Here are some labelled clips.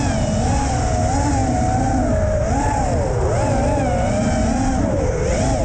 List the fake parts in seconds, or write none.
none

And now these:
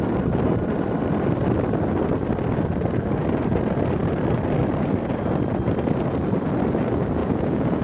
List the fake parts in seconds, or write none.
7.2-7.8 (vocoder, Vocos)